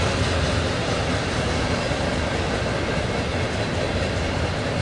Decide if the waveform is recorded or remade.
recorded